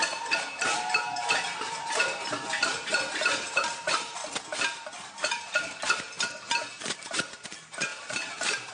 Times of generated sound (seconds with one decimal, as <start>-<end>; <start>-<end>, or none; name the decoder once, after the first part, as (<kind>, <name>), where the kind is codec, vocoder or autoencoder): 0.0-4.2 (vocoder, BigVGAN v2); 6.7-8.7